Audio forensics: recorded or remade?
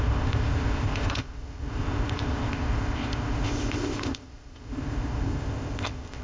remade